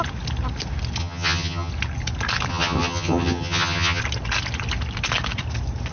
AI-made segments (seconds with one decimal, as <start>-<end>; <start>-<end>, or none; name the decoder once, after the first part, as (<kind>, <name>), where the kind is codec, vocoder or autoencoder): 1.0-1.7 (vocoder, HiFi-GAN); 2.5-4.0